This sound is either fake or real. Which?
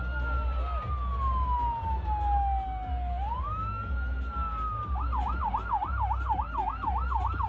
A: real